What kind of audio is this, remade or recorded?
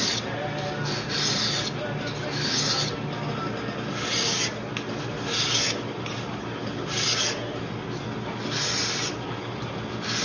recorded